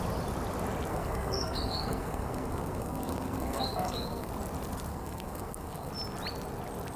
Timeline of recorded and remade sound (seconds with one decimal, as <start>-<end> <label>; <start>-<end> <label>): 0.0-0.9 recorded; 0.9-4.3 remade; 4.3-4.9 recorded; 4.9-5.9 remade; 5.9-7.0 recorded